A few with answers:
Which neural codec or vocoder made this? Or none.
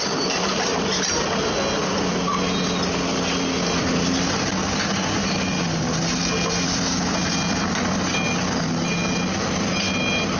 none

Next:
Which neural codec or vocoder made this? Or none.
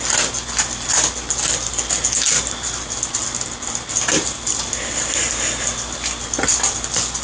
none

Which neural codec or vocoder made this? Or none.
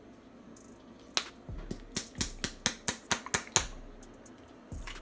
none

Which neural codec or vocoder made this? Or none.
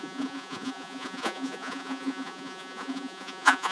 vocoder, Vocos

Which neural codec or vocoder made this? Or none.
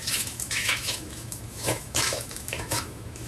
autoencoder, DAC-VAE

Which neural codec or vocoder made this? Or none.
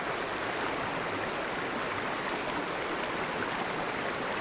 none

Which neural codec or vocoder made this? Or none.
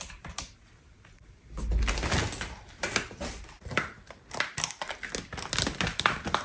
none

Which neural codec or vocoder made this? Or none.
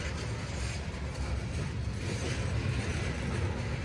none